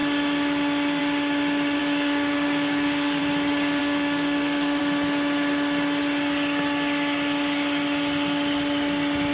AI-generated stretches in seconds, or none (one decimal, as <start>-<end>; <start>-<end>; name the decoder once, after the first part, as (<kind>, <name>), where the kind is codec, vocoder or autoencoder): 1.8-3.2 (codec, DAC); 3.8-4.8